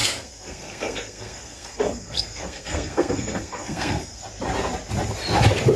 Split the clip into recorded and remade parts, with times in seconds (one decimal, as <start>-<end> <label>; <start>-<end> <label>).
0.0-4.2 remade; 4.2-5.8 recorded